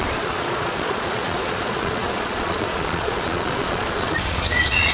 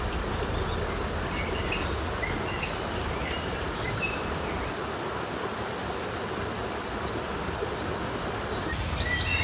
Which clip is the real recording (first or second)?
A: second